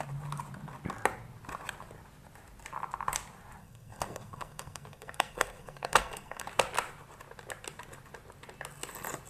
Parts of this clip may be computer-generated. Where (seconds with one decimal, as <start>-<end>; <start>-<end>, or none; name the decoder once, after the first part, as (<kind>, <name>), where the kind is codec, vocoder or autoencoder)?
3.6-6.5 (codec, SNAC)